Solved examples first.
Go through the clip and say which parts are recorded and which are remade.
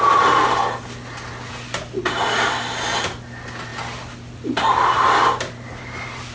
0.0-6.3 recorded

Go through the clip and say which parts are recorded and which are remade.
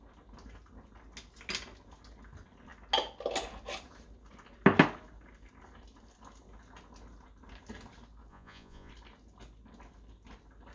0.0-8.3 recorded; 8.3-8.9 remade; 8.9-10.7 recorded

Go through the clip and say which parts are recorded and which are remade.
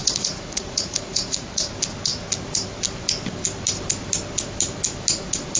0.0-1.7 remade; 1.7-5.6 recorded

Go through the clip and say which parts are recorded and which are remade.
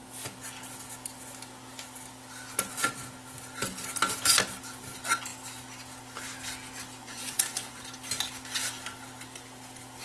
0.0-7.0 recorded; 7.0-7.8 remade; 7.8-10.0 recorded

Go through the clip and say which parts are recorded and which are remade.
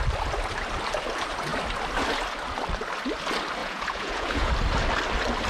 0.0-3.6 recorded; 3.6-4.5 remade; 4.5-5.5 recorded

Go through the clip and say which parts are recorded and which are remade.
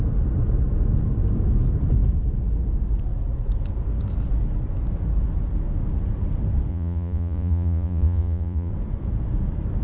0.0-6.7 recorded; 6.7-8.7 remade; 8.7-9.8 recorded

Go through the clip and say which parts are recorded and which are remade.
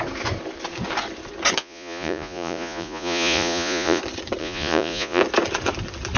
0.0-1.6 recorded; 1.6-4.0 remade; 4.0-4.4 recorded; 4.4-5.2 remade; 5.2-6.2 recorded